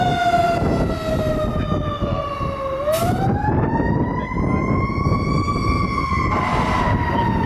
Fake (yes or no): no